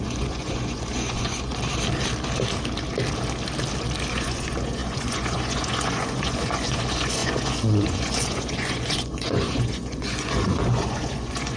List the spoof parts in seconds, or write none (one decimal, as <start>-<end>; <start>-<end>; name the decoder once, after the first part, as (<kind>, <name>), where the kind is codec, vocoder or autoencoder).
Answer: 0.0-1.5 (vocoder, Vocos); 4.1-11.6